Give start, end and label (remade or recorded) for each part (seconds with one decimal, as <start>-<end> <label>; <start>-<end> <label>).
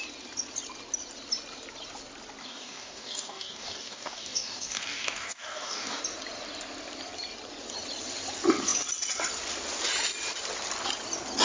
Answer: 0.0-2.4 recorded; 2.4-6.0 remade; 6.0-11.4 recorded